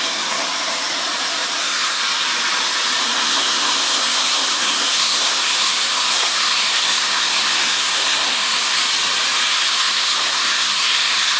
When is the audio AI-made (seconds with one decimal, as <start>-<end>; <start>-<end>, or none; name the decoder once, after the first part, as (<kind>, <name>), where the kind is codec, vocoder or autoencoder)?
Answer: 0.0-0.4 (codec, SNAC); 1.6-2.0; 3.0-8.8; 9.5-11.4